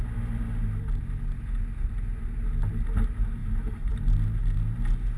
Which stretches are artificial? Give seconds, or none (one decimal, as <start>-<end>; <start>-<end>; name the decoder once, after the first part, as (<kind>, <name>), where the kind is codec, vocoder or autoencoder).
3.4-3.9 (vocoder, BigVGAN v2)